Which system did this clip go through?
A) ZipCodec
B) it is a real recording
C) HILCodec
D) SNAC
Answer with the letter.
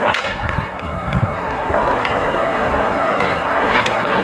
D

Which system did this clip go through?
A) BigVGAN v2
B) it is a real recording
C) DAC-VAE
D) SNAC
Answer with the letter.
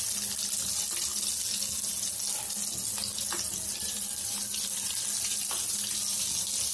B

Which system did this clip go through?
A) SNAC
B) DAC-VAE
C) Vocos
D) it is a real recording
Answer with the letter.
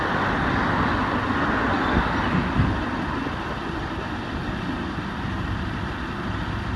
D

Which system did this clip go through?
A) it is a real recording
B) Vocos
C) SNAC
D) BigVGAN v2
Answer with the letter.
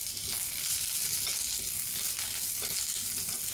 A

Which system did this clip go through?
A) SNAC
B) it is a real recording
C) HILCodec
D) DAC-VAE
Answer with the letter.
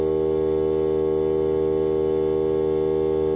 B